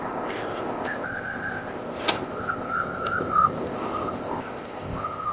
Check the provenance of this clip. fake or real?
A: fake